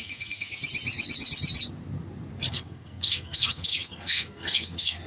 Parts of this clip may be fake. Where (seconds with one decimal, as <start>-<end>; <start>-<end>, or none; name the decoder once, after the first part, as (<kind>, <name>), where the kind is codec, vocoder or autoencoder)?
0.0-0.6 (codec, SNAC); 2.5-5.1